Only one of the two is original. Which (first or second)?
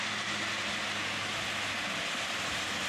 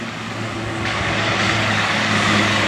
first